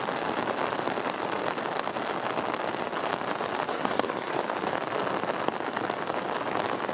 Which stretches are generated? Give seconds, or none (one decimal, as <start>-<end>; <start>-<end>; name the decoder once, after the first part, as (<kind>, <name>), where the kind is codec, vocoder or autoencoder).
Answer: 3.7-4.4 (codec, SNAC)